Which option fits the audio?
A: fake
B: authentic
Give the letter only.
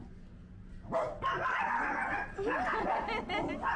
B